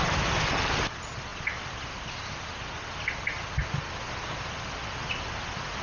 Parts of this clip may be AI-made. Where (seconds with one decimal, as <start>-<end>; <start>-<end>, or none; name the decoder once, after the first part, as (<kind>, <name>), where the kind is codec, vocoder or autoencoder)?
none